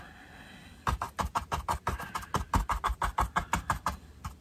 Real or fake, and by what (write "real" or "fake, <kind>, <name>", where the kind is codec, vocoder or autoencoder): real